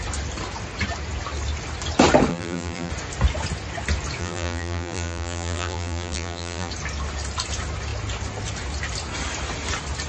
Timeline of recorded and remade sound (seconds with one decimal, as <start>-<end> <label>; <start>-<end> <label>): 0.0-2.3 recorded; 2.3-2.9 remade; 2.9-4.2 recorded; 4.2-6.7 remade; 6.7-10.1 recorded